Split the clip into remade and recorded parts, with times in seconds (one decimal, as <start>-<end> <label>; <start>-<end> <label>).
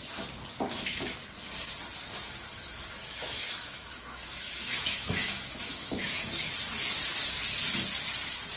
0.0-3.0 recorded; 3.0-6.5 remade; 6.5-8.6 recorded